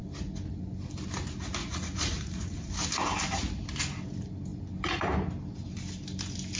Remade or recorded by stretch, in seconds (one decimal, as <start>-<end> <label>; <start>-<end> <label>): 0.0-1.6 recorded; 1.6-2.7 remade; 2.7-6.6 recorded